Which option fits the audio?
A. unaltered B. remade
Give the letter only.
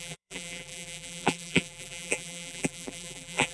B